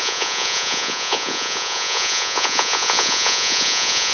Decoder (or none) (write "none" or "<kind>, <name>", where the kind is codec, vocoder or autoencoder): vocoder, Vocos